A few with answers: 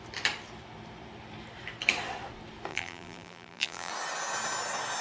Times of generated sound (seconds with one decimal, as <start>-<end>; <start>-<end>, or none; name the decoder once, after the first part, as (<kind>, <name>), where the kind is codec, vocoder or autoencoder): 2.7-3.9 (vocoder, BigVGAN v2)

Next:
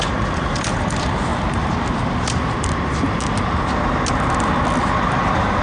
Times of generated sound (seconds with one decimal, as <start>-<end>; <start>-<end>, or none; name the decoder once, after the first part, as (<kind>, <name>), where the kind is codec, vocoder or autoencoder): 0.0-1.3 (vocoder, BigVGAN v2); 4.3-5.6

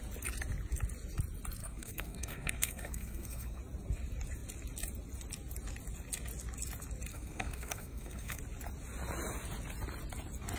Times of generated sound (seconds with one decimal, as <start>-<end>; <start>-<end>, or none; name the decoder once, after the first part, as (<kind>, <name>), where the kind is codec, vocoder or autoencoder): 1.6-3.6 (codec, SNAC); 7.1-8.4

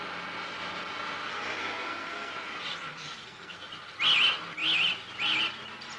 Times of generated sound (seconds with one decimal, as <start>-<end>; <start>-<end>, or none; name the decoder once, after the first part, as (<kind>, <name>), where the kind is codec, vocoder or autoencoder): 1.3-2.3 (codec, SNAC); 2.9-3.7

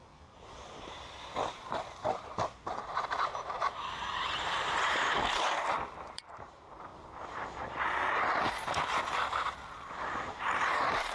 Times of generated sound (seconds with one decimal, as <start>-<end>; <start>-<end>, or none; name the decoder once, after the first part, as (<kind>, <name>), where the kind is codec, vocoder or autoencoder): 0.0-6.9 (vocoder, BigVGAN v2); 9.9-11.1

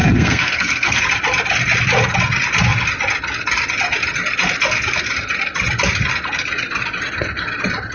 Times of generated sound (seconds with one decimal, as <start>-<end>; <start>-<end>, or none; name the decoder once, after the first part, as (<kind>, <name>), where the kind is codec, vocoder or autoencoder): 0.0-1.0 (codec, SNAC)